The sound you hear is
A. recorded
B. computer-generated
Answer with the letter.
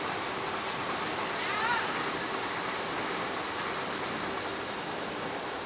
A